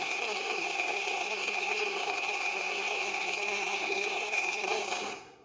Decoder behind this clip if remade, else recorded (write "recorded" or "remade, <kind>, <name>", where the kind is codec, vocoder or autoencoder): remade, codec, SNAC